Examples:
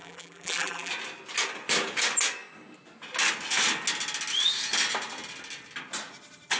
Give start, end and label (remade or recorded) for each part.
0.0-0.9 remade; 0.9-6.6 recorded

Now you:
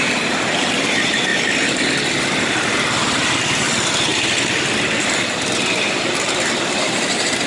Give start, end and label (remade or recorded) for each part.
0.0-1.3 remade; 1.3-2.4 recorded; 2.4-4.1 remade; 4.1-5.0 recorded; 5.0-7.5 remade

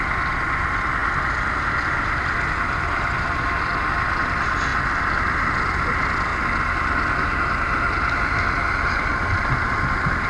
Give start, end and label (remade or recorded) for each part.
0.0-1.0 remade; 1.0-1.8 recorded; 1.8-6.3 remade; 6.3-8.9 recorded; 8.9-10.3 remade

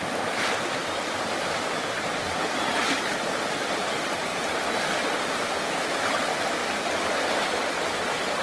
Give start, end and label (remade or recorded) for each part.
0.0-4.3 recorded; 4.3-5.9 remade; 5.9-6.6 recorded; 6.6-7.6 remade; 7.6-8.4 recorded

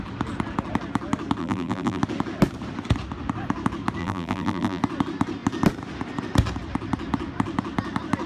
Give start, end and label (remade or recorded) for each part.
0.0-1.4 recorded; 1.4-2.0 remade; 2.0-4.0 recorded; 4.0-4.8 remade; 4.8-8.3 recorded

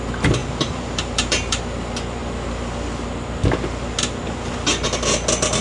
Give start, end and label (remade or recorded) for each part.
0.0-0.4 recorded; 0.4-1.6 remade; 1.6-5.6 recorded